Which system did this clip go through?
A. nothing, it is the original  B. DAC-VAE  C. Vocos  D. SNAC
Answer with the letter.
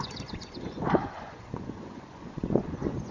C